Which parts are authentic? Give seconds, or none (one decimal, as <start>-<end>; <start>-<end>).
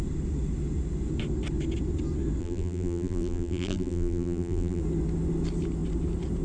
0.0-2.4; 4.8-6.4